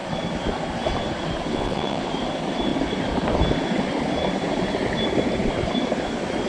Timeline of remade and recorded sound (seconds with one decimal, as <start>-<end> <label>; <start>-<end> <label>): 0.0-1.5 recorded; 1.5-2.1 remade; 2.1-6.5 recorded